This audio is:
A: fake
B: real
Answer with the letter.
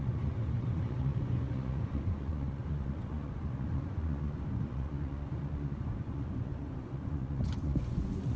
A